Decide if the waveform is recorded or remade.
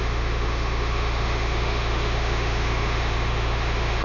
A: remade